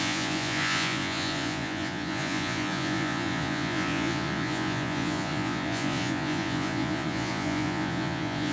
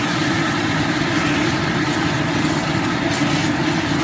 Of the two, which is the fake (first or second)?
first